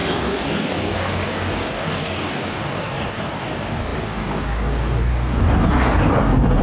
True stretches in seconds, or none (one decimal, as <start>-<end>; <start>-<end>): none